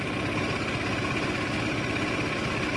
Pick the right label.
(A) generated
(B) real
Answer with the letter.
B